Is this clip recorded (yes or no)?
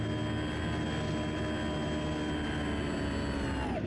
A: yes